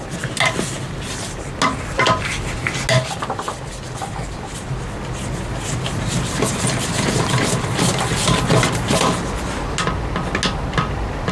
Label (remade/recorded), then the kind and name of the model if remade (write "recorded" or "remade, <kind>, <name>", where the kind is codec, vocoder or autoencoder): recorded